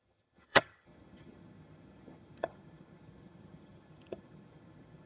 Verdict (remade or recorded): remade